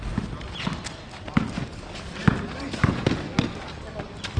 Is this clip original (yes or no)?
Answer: yes